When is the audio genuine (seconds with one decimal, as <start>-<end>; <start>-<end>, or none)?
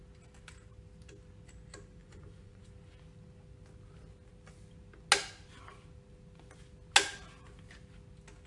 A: 0.0-2.0; 2.6-8.5